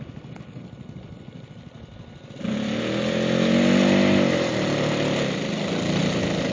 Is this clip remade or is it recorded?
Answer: recorded